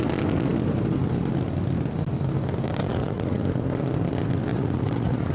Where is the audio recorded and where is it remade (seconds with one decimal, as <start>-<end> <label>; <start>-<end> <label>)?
0.0-2.8 recorded; 2.8-3.4 remade; 3.4-4.5 recorded; 4.5-5.3 remade